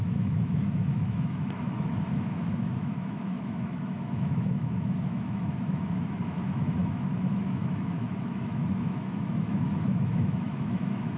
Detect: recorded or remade remade